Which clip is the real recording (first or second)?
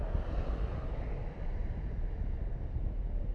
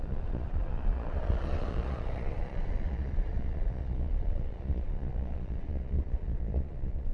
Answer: first